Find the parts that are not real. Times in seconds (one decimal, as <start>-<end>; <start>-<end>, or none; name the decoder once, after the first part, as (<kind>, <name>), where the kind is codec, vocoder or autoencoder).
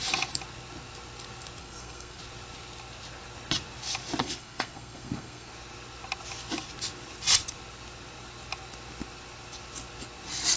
1.6-2.2 (codec, SNAC); 4.2-5.5